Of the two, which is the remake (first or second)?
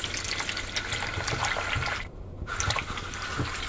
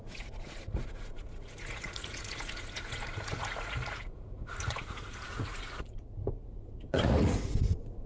second